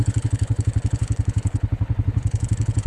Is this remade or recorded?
remade